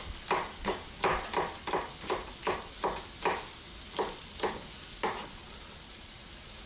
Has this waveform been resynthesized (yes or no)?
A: no